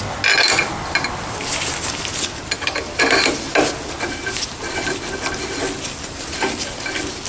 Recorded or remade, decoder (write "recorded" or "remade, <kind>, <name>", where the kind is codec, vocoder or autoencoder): recorded